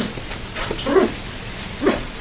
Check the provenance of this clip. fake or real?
real